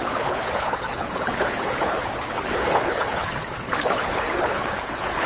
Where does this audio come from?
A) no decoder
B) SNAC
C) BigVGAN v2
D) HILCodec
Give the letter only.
D